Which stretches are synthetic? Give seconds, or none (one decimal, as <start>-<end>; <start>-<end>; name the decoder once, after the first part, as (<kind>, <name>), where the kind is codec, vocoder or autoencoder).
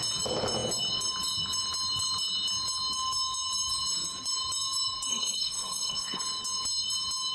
5.1-6.2 (codec, SNAC)